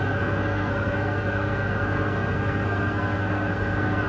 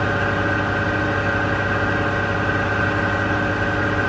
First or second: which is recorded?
second